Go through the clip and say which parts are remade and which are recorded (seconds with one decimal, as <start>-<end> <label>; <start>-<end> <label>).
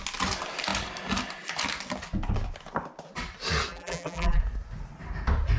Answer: 0.0-3.7 recorded; 3.7-4.4 remade; 4.4-5.6 recorded